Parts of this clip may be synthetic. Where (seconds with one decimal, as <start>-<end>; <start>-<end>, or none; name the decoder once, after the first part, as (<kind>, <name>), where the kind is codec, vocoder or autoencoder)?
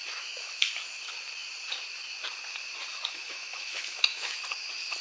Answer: 0.0-0.7 (autoencoder, DAC-VAE); 2.9-4.4